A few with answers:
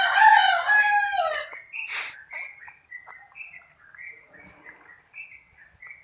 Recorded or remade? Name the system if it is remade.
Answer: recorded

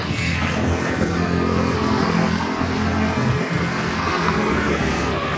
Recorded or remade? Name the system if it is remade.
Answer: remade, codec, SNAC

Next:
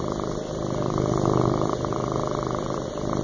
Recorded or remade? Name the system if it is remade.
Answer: recorded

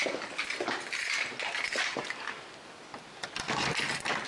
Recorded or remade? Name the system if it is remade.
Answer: recorded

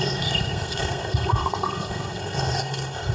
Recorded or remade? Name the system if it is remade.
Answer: remade, codec, SNAC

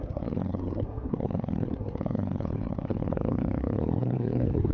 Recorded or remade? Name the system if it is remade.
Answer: remade, codec, SNAC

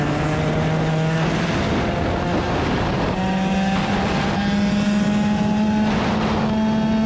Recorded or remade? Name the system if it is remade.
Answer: recorded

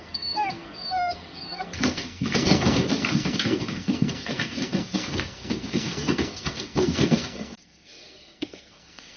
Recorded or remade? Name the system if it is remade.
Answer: remade, codec, SNAC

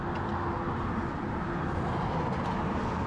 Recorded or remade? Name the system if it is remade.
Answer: recorded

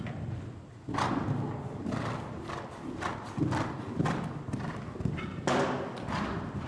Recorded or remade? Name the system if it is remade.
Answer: recorded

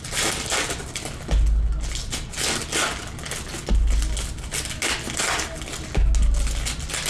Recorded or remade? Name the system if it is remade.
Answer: recorded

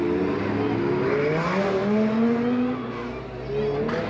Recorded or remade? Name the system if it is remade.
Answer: recorded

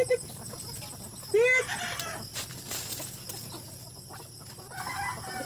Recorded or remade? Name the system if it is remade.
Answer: recorded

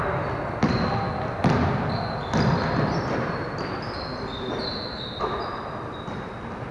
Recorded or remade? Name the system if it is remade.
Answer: recorded